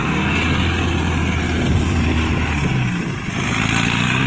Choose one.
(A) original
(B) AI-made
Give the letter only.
A